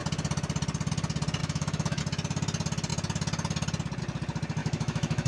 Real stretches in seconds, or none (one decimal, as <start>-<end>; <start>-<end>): 0.0-1.4; 2.0-4.6